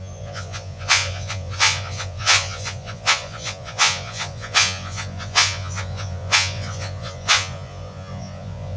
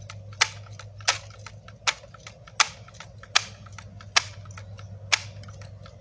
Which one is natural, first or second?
second